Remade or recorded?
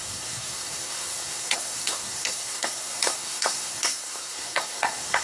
remade